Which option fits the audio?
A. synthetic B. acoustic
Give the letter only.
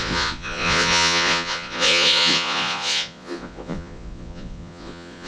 A